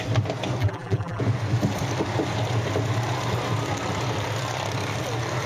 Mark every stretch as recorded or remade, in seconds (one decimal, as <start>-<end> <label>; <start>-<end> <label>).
0.0-0.6 recorded; 0.6-1.2 remade; 1.2-5.5 recorded